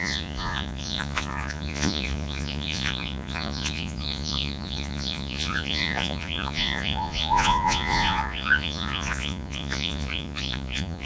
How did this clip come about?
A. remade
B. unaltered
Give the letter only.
A